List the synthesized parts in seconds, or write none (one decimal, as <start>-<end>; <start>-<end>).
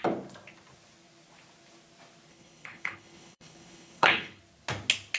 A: 2.3-4.4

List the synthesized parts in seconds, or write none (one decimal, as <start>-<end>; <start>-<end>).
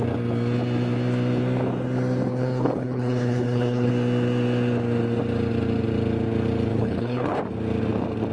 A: 2.3-3.9; 6.7-7.4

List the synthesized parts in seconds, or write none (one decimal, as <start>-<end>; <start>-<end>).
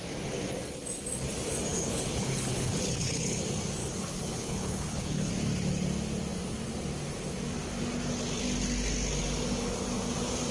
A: 1.7-3.4; 3.8-5.3